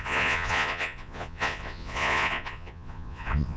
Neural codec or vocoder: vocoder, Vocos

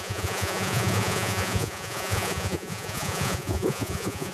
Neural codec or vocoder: vocoder, Vocos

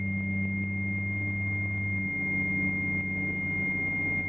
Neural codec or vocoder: none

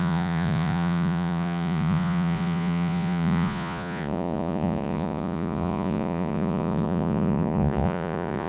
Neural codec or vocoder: vocoder, Vocos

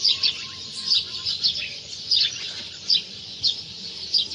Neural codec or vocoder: vocoder, Vocos